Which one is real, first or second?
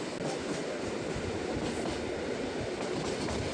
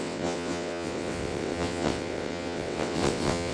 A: first